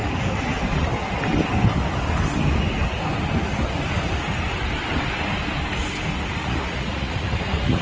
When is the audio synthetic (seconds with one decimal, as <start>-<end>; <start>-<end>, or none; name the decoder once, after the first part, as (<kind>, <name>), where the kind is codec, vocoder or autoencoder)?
6.4-7.8 (vocoder, Vocos)